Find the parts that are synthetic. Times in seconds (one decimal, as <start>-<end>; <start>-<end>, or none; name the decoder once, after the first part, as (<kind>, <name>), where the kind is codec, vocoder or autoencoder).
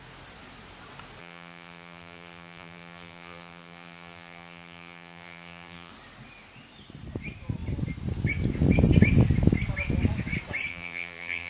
1.2-5.9 (vocoder, BigVGAN v2); 10.7-11.5